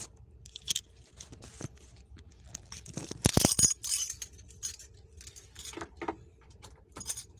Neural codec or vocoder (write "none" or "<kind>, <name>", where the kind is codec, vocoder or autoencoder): vocoder, BigVGAN v2